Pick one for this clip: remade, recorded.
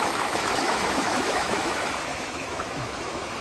remade